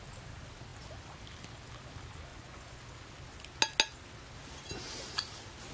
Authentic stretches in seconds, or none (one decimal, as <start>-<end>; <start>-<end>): 0.0-2.3; 2.8-5.7